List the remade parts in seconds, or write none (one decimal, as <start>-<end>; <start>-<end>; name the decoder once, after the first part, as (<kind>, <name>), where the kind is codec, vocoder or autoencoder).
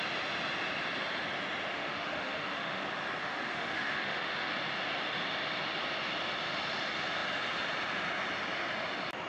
1.7-2.8 (autoencoder, DAC-VAE); 3.2-4.5